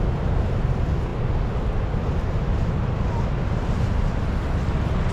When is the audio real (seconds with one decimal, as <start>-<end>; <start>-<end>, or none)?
0.0-5.1